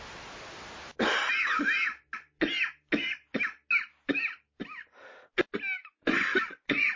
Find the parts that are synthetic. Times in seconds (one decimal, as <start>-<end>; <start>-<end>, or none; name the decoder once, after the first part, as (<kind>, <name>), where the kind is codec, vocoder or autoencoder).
5.8-6.3 (vocoder, Vocos)